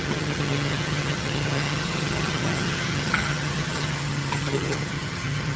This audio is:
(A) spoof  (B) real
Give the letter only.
A